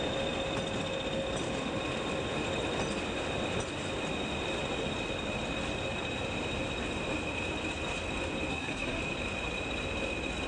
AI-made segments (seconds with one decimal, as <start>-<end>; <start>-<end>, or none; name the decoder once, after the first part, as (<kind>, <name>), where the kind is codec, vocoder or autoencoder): 8.5-9.0 (codec, SNAC)